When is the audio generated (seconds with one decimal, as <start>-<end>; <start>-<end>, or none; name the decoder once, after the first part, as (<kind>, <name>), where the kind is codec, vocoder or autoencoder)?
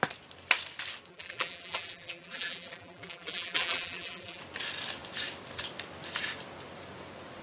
1.1-4.4 (vocoder, BigVGAN v2)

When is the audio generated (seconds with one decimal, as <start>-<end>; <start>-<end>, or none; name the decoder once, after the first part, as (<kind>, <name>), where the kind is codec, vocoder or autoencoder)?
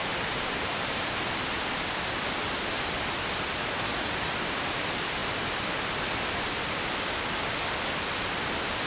0.0-1.0 (vocoder, BigVGAN v2); 5.2-6.1